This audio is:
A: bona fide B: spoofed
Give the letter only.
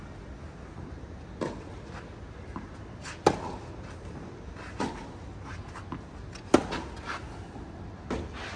A